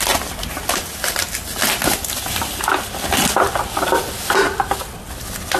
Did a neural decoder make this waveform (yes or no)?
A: no